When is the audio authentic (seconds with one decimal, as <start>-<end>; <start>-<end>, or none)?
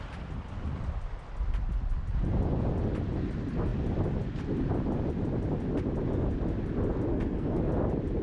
0.0-7.1; 7.6-8.2